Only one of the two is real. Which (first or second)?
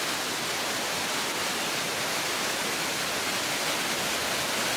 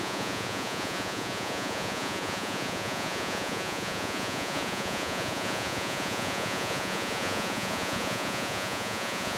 first